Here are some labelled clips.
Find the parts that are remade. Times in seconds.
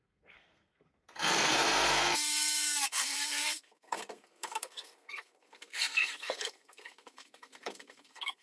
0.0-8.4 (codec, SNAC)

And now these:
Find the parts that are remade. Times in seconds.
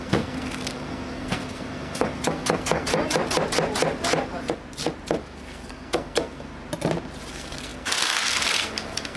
0.0-2.9 (codec, SNAC); 5.2-6.5; 7.3-9.2